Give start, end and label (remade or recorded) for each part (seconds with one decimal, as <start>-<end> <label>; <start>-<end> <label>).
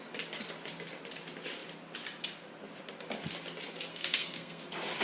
0.0-3.9 recorded; 3.9-4.6 remade; 4.6-5.0 recorded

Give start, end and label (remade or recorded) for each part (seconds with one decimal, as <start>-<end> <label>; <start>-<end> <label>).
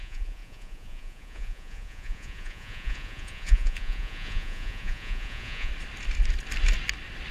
0.0-5.7 remade; 5.7-7.3 recorded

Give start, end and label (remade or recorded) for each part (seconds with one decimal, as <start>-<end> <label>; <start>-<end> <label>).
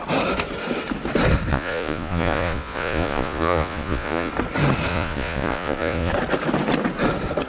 0.0-1.5 recorded; 1.5-4.3 remade; 4.3-4.9 recorded; 4.9-6.1 remade; 6.1-7.5 recorded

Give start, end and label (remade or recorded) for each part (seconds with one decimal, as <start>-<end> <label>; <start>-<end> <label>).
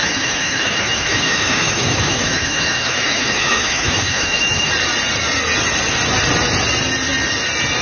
0.0-4.7 remade; 4.7-7.8 recorded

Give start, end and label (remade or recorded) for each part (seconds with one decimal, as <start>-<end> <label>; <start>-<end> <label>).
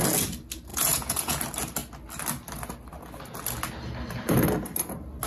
0.0-0.7 recorded; 0.7-1.4 remade; 1.4-5.3 recorded